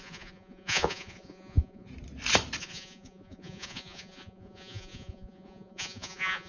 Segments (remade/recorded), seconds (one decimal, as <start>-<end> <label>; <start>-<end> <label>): 0.0-1.9 remade; 1.9-2.6 recorded; 2.6-6.5 remade